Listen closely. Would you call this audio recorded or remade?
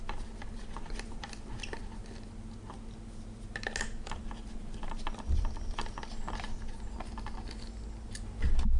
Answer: recorded